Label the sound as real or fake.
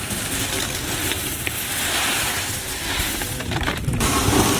fake